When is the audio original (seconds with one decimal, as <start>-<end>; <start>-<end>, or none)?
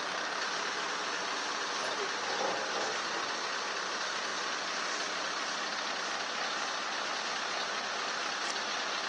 0.0-9.1